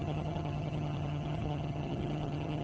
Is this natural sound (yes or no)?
no